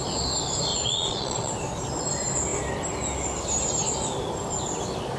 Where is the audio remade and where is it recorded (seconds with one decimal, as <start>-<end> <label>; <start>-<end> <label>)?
0.0-0.7 recorded; 0.7-1.5 remade; 1.5-5.2 recorded